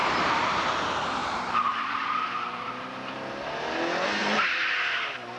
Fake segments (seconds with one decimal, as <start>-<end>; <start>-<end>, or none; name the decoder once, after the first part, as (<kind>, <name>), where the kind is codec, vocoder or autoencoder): 0.0-0.5 (vocoder, BigVGAN v2); 1.2-2.7; 4.2-4.7